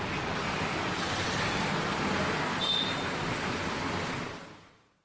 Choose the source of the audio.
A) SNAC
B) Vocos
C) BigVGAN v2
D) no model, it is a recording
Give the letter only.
C